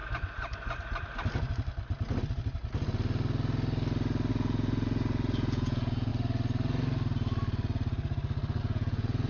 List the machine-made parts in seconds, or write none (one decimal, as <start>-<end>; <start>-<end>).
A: 4.3-6.1; 8.6-9.3